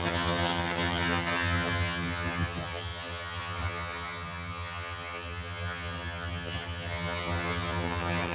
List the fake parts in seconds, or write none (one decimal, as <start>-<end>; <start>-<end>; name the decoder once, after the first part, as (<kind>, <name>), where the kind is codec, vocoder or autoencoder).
0.0-8.3 (vocoder, HiFi-GAN)